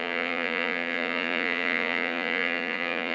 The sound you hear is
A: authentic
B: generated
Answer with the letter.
B